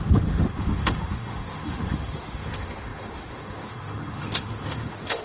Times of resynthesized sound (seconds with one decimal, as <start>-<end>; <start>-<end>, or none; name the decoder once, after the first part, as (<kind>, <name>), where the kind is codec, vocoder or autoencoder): 0.0-5.2 (autoencoder, DAC-VAE)